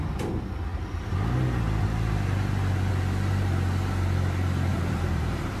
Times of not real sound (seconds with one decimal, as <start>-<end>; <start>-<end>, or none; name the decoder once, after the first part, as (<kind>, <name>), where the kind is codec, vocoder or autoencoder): 4.7-5.6 (vocoder, BigVGAN v2)